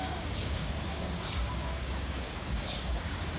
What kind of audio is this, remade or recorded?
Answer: remade